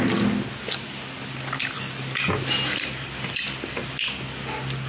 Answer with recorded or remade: recorded